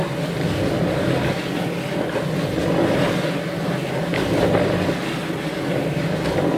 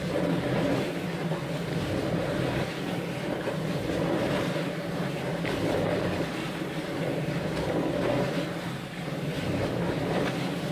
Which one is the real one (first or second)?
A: first